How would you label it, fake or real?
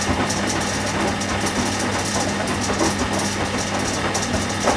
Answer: real